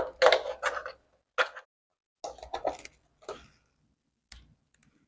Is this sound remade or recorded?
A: recorded